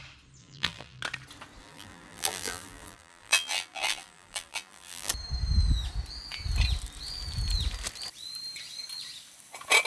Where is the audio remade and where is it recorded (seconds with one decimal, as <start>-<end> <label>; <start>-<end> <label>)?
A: 0.0-0.4 recorded; 0.4-1.0 remade; 1.0-1.6 recorded; 1.6-5.1 remade; 5.1-9.9 recorded